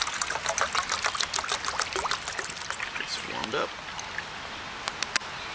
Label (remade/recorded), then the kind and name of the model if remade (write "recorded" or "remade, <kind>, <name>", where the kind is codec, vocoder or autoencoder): recorded